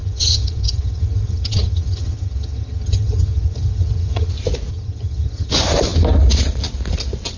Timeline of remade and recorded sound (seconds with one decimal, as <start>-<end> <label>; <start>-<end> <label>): 0.0-4.3 remade; 4.3-4.7 recorded; 4.7-5.5 remade; 5.5-7.4 recorded